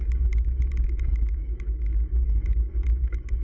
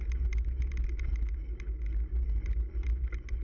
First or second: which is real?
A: second